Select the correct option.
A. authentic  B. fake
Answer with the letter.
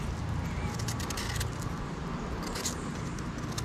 A